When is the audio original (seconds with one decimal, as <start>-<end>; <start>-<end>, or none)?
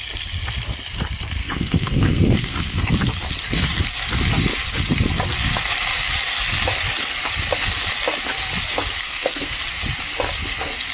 0.0-1.4; 2.9-9.0; 9.6-10.9